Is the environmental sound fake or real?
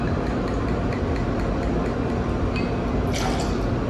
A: real